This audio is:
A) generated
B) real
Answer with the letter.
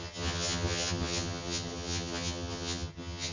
A